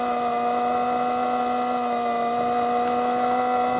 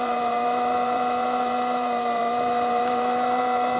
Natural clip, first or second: first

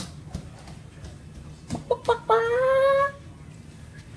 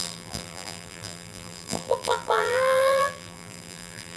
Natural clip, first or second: first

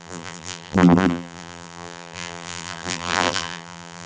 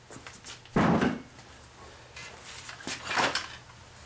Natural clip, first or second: second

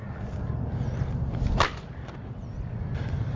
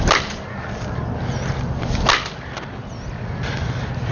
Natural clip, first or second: second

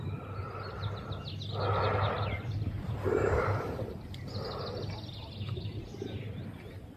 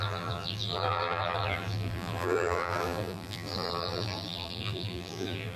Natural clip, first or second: first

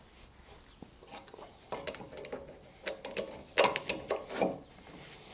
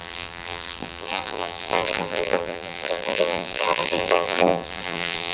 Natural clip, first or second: first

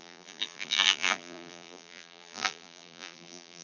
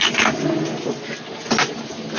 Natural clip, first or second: second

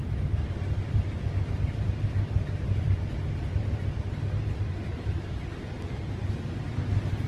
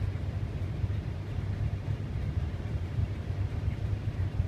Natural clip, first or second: first